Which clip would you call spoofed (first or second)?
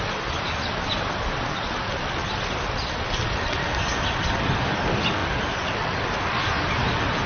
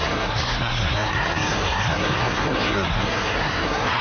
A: second